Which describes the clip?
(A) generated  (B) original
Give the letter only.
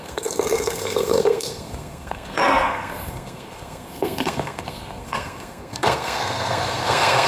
A